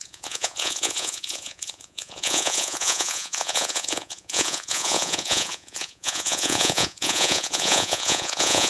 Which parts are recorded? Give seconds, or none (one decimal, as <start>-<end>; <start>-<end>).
none